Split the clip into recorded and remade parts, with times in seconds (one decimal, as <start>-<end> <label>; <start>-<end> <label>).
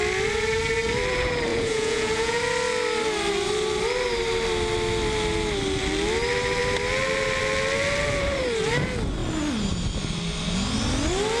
0.0-1.5 recorded; 1.5-2.4 remade; 2.4-11.4 recorded